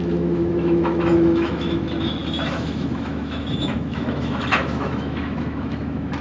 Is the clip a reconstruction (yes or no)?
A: yes